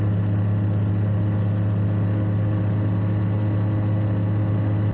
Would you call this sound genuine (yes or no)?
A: yes